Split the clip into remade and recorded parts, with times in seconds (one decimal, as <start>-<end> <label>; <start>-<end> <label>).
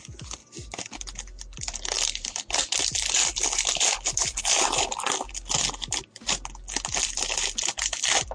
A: 0.0-8.3 recorded